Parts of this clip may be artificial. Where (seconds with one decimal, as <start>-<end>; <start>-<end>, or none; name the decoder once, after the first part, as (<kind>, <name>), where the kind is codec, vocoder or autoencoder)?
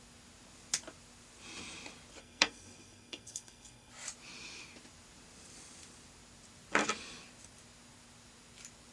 2.2-3.9 (codec, SNAC)